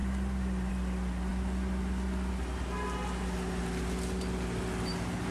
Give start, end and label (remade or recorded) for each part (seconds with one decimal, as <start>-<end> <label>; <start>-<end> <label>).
0.0-5.3 recorded